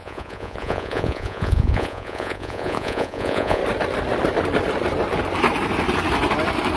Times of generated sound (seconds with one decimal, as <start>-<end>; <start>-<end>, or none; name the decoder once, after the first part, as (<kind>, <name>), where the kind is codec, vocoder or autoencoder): 0.0-3.6 (vocoder, Vocos)